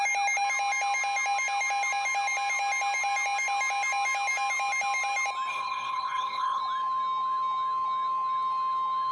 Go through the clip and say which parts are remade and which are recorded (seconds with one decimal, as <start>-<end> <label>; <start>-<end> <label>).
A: 0.0-5.5 recorded; 5.5-6.6 remade; 6.6-9.1 recorded